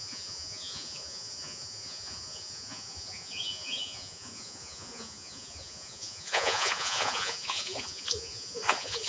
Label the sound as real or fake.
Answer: fake